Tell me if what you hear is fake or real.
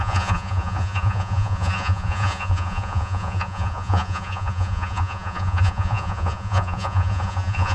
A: fake